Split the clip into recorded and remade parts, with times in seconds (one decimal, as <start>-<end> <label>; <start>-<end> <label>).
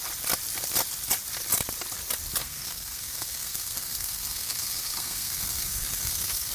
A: 0.0-2.4 recorded; 2.4-6.5 remade